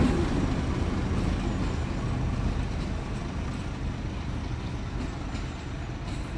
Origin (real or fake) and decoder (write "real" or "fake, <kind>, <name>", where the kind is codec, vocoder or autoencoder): real